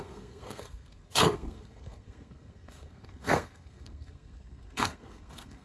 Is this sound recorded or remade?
remade